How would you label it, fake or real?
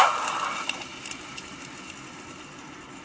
real